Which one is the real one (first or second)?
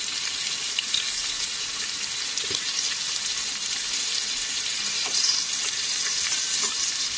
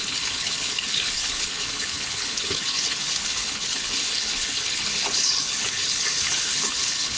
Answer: first